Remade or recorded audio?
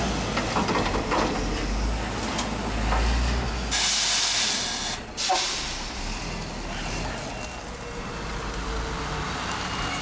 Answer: recorded